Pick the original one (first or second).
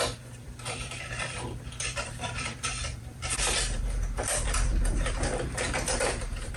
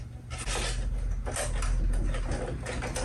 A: second